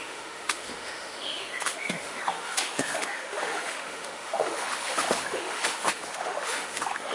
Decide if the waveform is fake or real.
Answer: fake